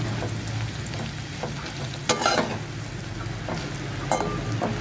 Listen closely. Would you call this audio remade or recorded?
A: recorded